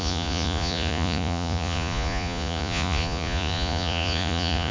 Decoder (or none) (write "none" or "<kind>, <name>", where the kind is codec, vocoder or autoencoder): vocoder, Vocos